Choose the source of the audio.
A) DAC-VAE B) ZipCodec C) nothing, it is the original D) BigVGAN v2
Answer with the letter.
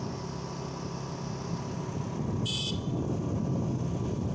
C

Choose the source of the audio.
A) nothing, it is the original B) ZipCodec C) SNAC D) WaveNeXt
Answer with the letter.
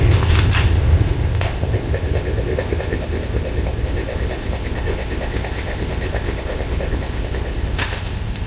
B